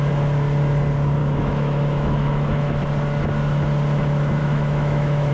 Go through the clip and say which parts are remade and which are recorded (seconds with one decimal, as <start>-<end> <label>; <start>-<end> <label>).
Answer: 0.0-1.2 recorded; 1.2-2.8 remade; 2.8-4.4 recorded; 4.4-5.3 remade